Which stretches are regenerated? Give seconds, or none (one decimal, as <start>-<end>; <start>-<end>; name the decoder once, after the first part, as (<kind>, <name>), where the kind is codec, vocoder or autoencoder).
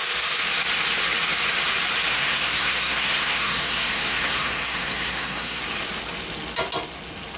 2.1-5.6 (codec, SNAC)